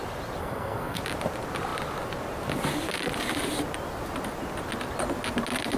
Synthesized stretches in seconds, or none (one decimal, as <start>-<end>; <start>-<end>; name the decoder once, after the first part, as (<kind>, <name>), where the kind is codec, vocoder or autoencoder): 0.4-1.0 (codec, SNAC)